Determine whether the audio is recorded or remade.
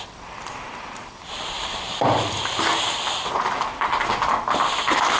recorded